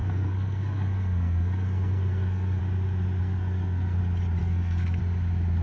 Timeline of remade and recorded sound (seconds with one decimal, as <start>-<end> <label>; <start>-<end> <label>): 0.0-2.6 remade; 2.6-3.2 recorded; 3.2-4.0 remade; 4.0-4.4 recorded; 4.4-5.0 remade; 5.0-5.6 recorded